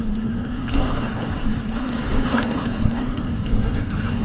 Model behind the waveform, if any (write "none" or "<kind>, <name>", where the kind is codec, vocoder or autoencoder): codec, SNAC